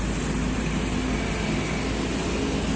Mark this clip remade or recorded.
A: recorded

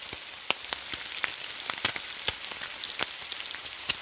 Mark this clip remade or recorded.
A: recorded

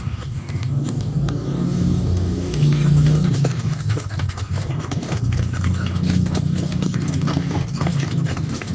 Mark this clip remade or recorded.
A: remade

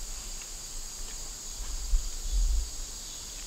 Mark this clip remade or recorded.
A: recorded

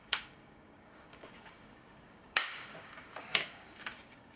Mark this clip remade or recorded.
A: remade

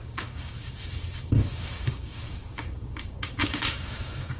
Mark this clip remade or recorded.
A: remade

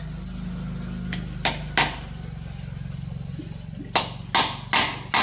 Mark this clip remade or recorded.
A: recorded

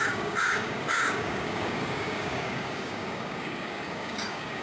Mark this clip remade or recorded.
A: remade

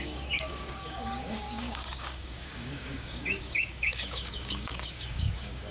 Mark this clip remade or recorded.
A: remade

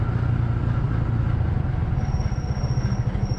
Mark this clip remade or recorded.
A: recorded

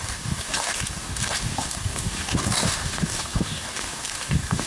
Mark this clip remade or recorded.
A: remade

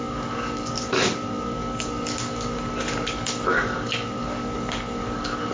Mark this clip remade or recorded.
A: remade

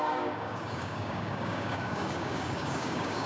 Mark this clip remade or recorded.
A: remade